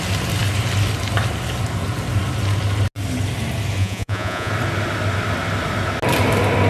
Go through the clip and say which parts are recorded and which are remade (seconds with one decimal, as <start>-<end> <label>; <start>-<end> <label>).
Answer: 0.0-3.8 recorded; 3.8-4.5 remade; 4.5-6.7 recorded